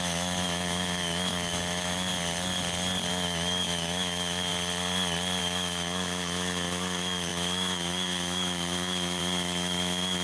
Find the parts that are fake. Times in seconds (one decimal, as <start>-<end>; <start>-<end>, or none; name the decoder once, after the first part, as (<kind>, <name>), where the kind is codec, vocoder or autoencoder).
0.0-2.1 (autoencoder, DAC-VAE); 3.1-4.5; 5.4-10.2